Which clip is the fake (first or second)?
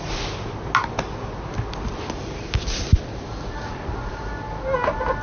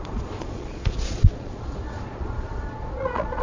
second